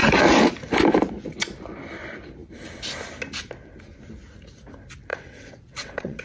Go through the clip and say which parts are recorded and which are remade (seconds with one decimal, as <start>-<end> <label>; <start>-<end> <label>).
0.0-5.1 recorded; 5.1-6.2 remade